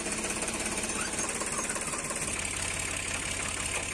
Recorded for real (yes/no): yes